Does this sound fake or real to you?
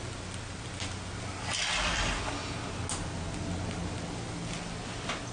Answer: real